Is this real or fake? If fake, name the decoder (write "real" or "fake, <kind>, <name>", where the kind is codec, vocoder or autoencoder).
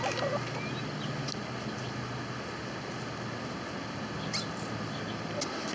real